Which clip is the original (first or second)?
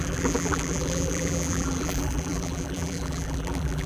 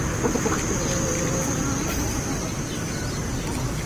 second